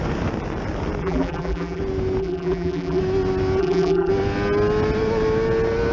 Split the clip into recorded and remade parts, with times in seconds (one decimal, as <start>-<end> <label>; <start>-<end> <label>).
0.0-1.0 recorded; 1.0-1.8 remade; 1.8-2.2 recorded; 2.2-3.0 remade; 3.0-3.6 recorded; 3.6-4.1 remade; 4.1-5.9 recorded